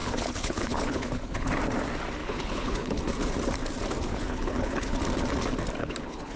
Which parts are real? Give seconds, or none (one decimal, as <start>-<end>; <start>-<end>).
1.6-2.2; 3.0-4.1; 5.0-5.8